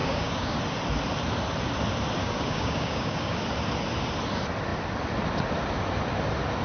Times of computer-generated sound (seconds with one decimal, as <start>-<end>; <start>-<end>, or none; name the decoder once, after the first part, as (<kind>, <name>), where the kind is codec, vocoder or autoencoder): 0.0-0.6 (codec, DAC); 2.2-3.4

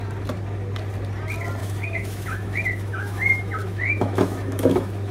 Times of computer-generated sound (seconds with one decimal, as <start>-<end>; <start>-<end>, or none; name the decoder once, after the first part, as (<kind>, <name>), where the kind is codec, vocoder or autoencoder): 1.6-5.1 (autoencoder, DAC-VAE)

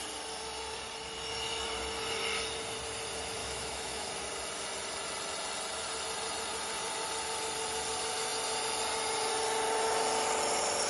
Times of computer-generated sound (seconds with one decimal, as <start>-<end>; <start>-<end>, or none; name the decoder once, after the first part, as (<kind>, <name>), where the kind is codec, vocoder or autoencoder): 3.4-4.1 (autoencoder, DAC-VAE)

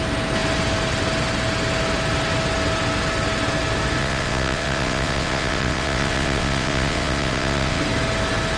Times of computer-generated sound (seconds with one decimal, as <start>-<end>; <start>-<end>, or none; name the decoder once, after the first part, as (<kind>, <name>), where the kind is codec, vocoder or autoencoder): 4.0-7.8 (vocoder, WaveNeXt)

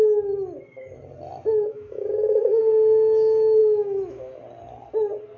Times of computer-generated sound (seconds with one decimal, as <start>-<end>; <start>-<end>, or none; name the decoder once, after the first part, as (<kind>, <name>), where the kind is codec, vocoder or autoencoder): 1.7-2.6 (autoencoder, DAC-VAE); 3.6-4.4

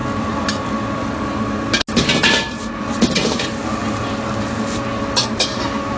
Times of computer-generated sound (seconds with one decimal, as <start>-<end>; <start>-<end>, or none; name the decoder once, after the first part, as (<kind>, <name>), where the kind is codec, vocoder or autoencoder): none

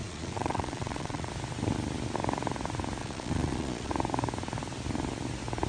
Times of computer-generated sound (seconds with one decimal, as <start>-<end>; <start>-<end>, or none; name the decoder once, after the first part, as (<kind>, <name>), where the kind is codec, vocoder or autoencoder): 0.0-1.3 (vocoder, Vocos); 3.0-3.9

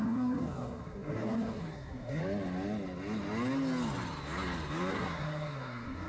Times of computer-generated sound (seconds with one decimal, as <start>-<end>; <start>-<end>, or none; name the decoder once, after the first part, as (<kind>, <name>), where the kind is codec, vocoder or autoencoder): 0.0-2.2 (codec, SNAC); 4.9-6.1